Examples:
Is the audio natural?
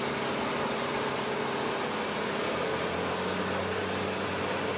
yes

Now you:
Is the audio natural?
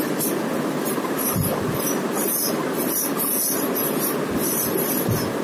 yes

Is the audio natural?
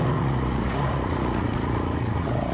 no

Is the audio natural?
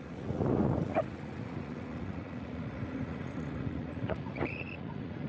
no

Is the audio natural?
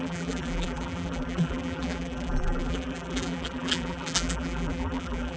no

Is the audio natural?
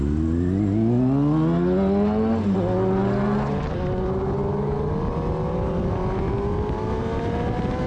yes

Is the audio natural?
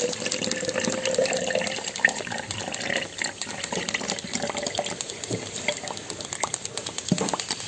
yes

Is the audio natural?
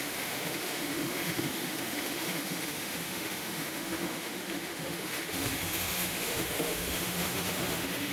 no